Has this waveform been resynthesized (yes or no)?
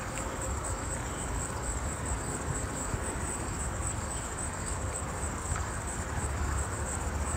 yes